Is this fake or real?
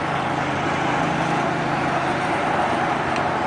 real